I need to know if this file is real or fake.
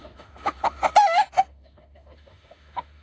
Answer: fake